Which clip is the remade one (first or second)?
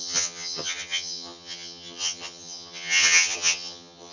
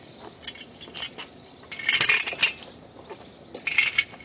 first